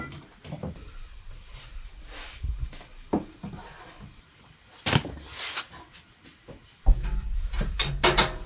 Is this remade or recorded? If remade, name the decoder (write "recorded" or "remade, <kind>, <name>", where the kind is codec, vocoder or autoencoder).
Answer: recorded